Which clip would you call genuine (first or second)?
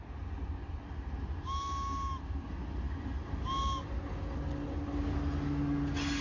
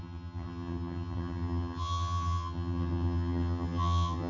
first